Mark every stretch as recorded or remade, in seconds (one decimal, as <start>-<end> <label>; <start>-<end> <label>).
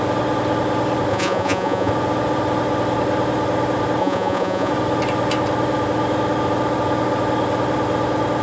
0.0-1.1 recorded; 1.1-1.9 remade; 1.9-4.0 recorded; 4.0-4.7 remade; 4.7-8.4 recorded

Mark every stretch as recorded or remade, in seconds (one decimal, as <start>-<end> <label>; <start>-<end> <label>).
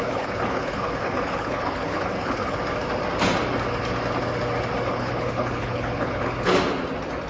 0.0-2.6 remade; 2.6-4.9 recorded; 4.9-6.5 remade; 6.5-7.3 recorded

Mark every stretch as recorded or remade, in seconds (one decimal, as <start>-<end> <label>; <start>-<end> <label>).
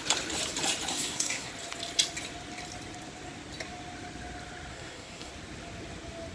0.0-0.9 recorded; 0.9-1.5 remade; 1.5-4.7 recorded; 4.7-5.3 remade; 5.3-6.3 recorded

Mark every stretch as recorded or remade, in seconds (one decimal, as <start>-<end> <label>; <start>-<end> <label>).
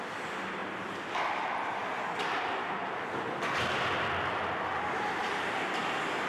0.0-6.3 recorded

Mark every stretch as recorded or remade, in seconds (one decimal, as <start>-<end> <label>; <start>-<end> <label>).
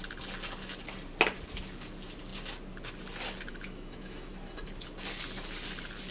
0.0-3.5 recorded; 3.5-4.3 remade; 4.3-6.1 recorded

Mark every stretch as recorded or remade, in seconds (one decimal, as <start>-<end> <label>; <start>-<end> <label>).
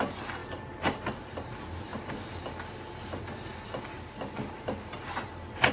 0.0-5.7 recorded